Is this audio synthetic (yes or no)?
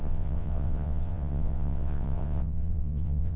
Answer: yes